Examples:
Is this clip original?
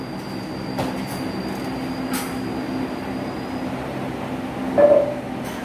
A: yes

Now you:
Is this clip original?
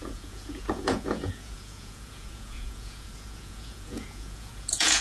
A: no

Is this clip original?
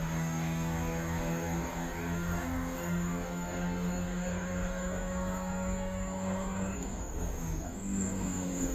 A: no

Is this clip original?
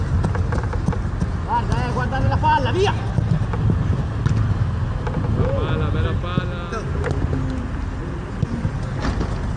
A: yes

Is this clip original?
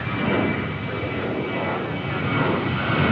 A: yes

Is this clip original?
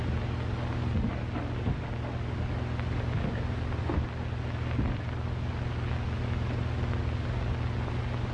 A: yes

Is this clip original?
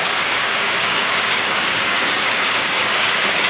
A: no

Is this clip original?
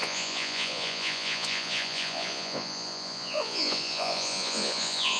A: no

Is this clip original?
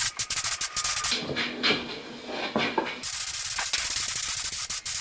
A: yes